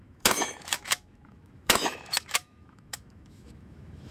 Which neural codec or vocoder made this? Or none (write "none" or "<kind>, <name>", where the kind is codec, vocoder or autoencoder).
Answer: autoencoder, DAC-VAE